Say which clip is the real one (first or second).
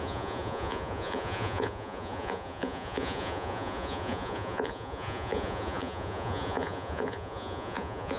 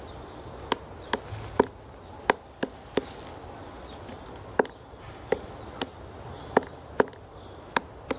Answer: second